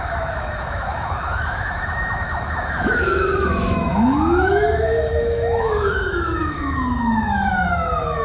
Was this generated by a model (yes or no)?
yes